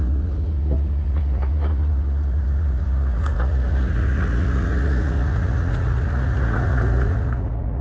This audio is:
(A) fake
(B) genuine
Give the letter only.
A